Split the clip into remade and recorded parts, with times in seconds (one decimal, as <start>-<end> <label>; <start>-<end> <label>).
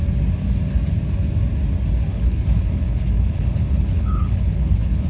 0.0-2.1 recorded; 2.1-5.1 remade